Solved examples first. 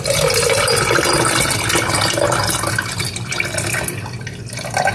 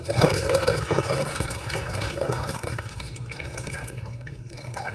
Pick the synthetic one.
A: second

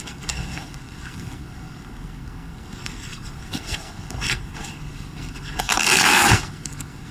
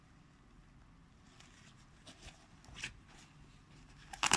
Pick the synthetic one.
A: first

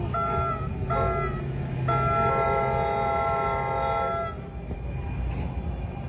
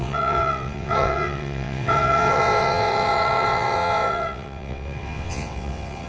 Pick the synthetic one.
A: second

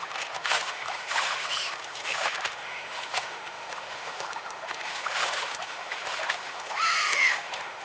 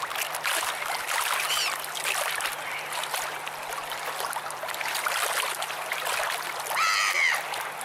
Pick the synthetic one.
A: first